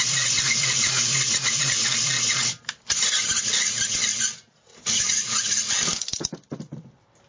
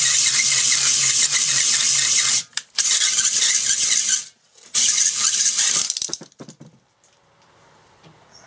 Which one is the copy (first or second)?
second